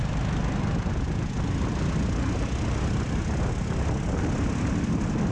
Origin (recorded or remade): recorded